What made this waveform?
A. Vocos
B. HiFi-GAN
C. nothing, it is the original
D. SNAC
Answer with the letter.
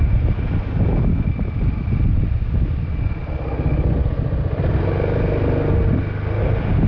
C